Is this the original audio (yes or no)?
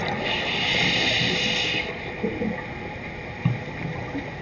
yes